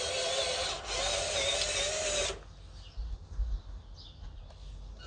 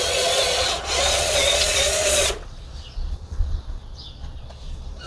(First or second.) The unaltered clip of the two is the first